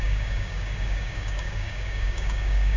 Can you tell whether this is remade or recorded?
remade